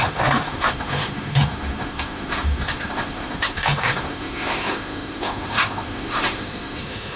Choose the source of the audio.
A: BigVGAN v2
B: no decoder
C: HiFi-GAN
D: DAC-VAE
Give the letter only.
D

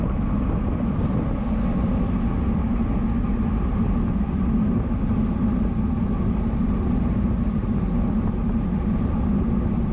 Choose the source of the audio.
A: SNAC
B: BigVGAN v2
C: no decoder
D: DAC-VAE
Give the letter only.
C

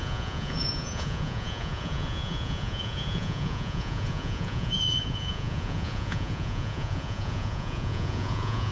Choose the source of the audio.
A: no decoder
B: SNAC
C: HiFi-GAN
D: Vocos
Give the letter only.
D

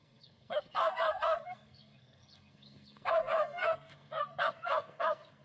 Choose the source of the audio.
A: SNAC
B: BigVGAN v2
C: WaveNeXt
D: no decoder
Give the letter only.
A